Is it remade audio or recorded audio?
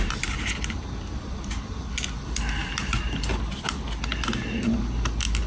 recorded